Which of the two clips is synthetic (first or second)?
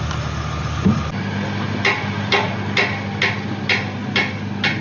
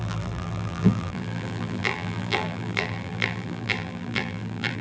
second